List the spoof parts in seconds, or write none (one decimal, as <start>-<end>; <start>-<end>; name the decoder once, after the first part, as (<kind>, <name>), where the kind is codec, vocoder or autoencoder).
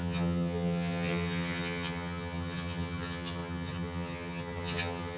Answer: 0.0-5.2 (vocoder, HiFi-GAN)